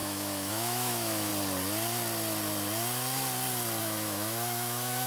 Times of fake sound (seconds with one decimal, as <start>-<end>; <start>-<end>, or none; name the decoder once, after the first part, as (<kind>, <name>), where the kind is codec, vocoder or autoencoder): 0.0-1.3 (autoencoder, DAC-VAE); 3.8-5.1